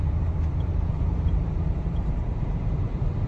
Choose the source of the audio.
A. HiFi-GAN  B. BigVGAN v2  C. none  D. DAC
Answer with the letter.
B